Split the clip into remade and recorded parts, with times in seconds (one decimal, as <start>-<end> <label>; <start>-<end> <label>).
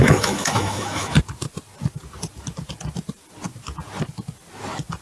0.0-1.1 remade; 1.1-5.0 recorded